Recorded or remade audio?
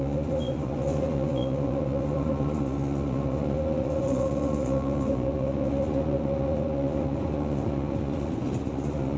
remade